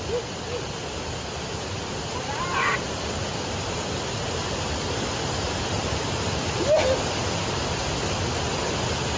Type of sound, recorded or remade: recorded